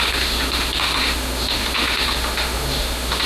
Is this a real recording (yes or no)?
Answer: no